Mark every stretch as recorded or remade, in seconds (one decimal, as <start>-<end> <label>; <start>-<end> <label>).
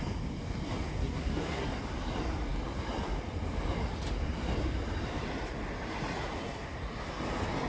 0.0-1.0 recorded; 1.0-1.7 remade; 1.7-7.7 recorded